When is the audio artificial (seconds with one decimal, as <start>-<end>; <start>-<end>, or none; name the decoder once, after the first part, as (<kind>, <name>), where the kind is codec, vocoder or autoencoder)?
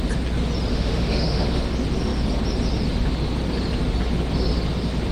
0.7-1.7 (autoencoder, DAC-VAE)